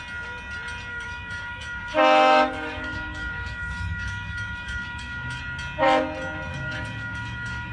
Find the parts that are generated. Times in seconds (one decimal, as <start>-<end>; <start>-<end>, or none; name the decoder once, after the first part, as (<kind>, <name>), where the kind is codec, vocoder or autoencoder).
0.9-5.4 (codec, DAC); 6.5-7.7